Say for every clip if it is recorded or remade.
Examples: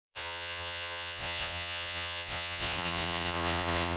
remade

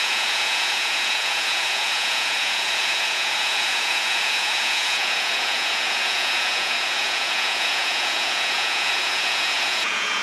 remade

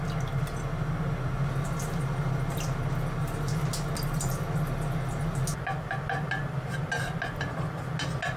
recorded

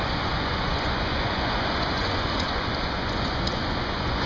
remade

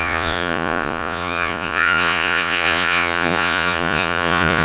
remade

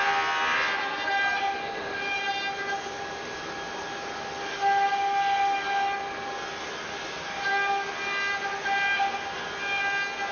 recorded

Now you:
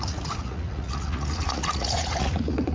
remade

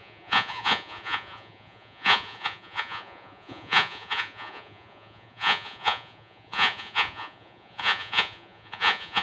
remade